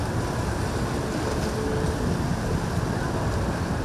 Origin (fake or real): real